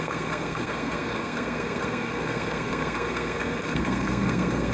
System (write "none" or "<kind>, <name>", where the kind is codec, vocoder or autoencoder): codec, SNAC